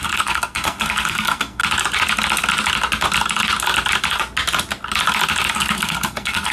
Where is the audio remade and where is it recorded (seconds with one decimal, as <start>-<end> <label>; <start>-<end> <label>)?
0.0-1.6 remade; 1.6-5.5 recorded; 5.5-6.5 remade